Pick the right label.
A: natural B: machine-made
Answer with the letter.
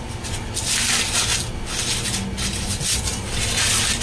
A